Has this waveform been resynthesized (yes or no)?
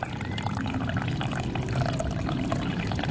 no